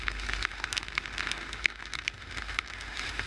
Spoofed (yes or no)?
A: yes